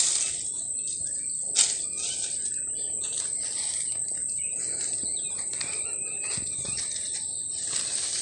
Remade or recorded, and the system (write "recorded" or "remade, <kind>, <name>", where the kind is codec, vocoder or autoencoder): recorded